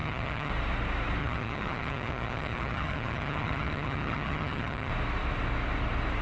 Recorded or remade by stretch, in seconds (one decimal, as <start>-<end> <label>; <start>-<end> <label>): 0.0-0.5 remade; 0.5-1.2 recorded; 1.2-4.9 remade; 4.9-6.2 recorded